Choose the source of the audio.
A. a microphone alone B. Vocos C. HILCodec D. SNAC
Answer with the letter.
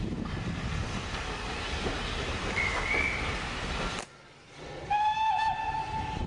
A